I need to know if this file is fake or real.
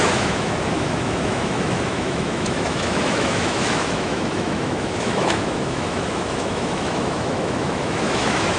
fake